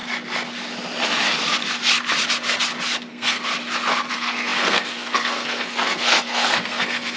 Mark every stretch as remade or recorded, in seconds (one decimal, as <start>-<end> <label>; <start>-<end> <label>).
0.0-3.1 recorded; 3.1-3.5 remade; 3.5-4.1 recorded; 4.1-7.2 remade